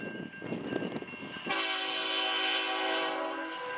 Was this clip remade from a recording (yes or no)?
no